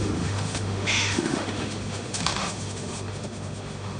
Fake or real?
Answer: fake